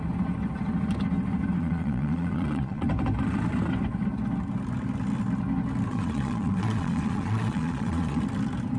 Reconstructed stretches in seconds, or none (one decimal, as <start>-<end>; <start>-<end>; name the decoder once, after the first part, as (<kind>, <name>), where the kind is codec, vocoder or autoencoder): 1.6-2.9 (vocoder, Vocos); 5.9-8.2